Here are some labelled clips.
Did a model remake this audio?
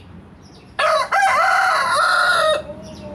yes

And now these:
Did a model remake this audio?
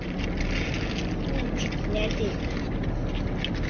no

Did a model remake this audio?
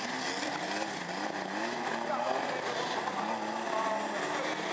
no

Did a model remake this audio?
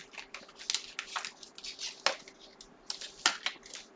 no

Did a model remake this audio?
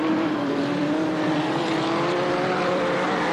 yes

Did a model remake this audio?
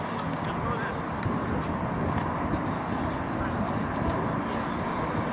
no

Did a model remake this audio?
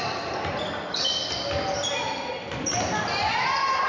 no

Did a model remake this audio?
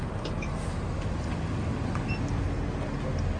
no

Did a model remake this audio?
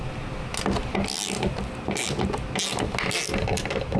no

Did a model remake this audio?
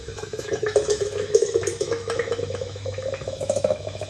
yes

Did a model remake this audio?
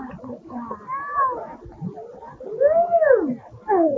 no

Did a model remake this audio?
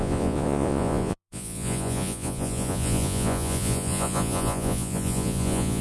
yes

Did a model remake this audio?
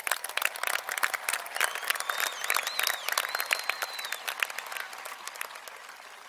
no